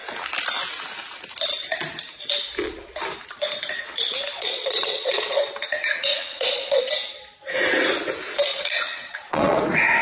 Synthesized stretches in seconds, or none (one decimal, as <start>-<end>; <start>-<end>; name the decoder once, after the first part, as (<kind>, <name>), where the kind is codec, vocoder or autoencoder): 4.3-5.4 (vocoder, Vocos); 6.1-6.8; 8.5-9.6

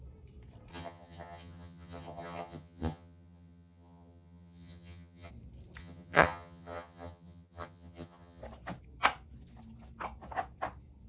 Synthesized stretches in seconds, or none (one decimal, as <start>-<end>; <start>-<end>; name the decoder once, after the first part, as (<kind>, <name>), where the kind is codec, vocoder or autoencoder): 0.7-5.3 (vocoder, HiFi-GAN); 5.8-8.4

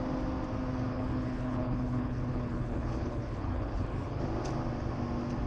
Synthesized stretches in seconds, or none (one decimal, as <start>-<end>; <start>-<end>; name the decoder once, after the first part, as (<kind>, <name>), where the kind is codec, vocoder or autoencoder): 0.9-4.2 (codec, HILCodec)

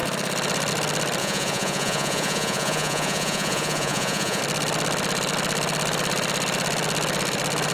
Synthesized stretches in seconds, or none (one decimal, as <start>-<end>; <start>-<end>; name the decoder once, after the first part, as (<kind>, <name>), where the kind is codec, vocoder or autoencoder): 1.2-4.4 (vocoder, Vocos)

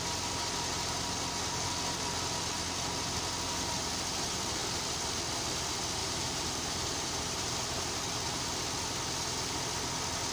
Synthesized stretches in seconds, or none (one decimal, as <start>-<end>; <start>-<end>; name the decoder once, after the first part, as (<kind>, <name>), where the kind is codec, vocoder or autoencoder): 6.0-7.9 (vocoder, BigVGAN v2)